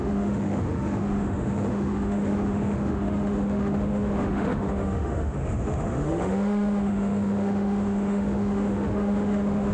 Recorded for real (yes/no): no